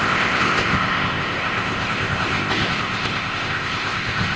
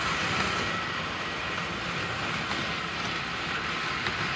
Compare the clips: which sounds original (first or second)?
second